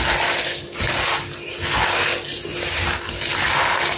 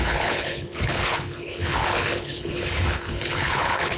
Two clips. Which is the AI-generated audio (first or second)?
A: second